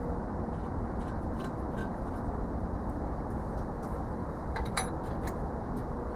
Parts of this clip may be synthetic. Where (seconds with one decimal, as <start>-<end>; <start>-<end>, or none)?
4.2-4.9